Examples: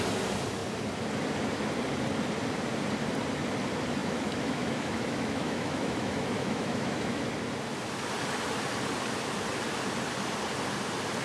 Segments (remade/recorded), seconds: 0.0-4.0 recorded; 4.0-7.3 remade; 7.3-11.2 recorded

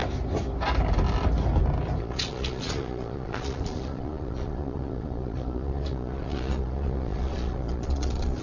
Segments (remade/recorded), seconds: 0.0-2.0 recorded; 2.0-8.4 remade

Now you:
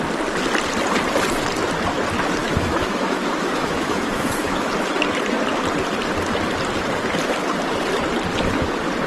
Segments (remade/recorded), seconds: 0.0-2.4 recorded; 2.4-4.7 remade; 4.7-9.1 recorded